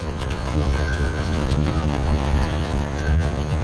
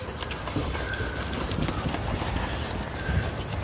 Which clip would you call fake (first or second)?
first